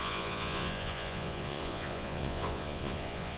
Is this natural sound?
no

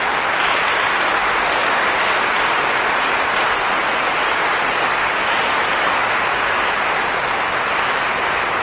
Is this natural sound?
yes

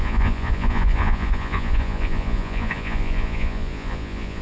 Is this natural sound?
no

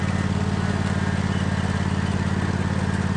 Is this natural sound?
yes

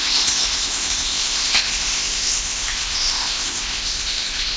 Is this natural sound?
no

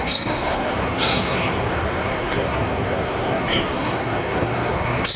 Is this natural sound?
no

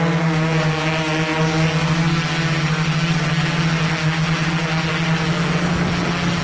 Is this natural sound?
yes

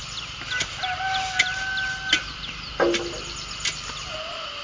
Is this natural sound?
yes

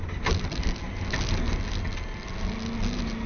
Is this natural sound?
yes